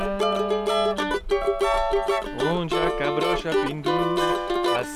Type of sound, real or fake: real